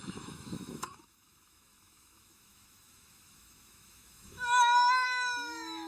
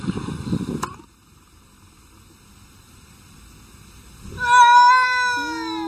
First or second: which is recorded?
second